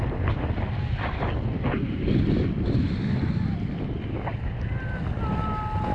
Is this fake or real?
real